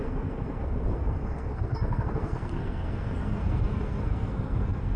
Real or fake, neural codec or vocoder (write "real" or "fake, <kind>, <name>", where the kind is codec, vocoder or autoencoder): fake, codec, SNAC